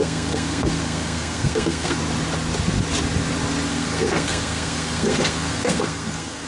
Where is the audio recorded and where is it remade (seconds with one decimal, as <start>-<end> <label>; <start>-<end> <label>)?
0.0-2.0 remade; 2.0-3.7 recorded; 3.7-6.5 remade